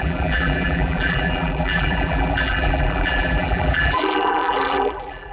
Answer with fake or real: fake